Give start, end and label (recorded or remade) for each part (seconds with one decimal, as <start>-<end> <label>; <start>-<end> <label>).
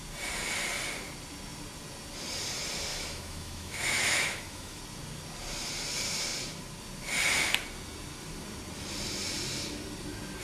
0.0-2.9 recorded; 2.9-4.8 remade; 4.8-10.4 recorded